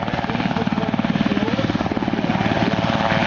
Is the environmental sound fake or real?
real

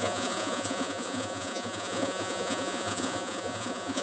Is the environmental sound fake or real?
fake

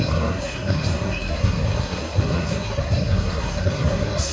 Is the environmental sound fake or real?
fake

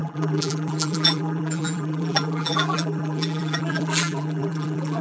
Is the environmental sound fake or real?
fake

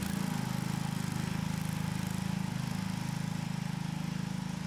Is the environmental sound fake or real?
real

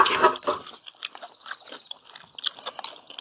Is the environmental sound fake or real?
real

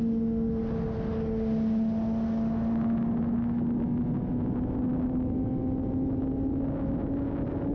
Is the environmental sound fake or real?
real